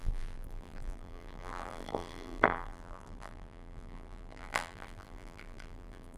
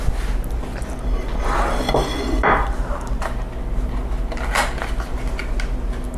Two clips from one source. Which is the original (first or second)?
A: second